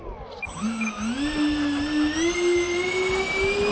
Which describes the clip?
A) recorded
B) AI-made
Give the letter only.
A